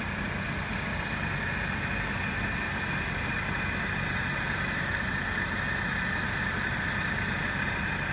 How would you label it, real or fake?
real